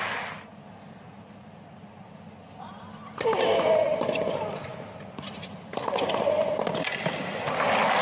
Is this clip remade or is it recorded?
recorded